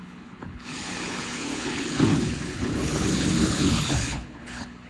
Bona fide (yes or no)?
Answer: no